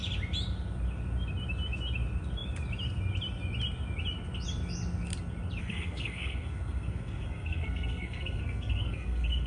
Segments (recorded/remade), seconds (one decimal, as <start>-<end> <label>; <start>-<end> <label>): 0.0-5.6 recorded; 5.6-9.5 remade